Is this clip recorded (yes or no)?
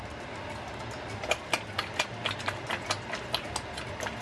yes